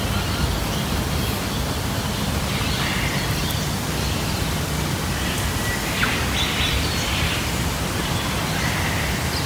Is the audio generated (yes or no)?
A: no